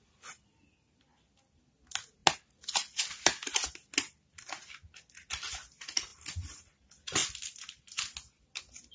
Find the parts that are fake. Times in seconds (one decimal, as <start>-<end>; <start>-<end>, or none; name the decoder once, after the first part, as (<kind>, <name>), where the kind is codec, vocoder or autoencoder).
none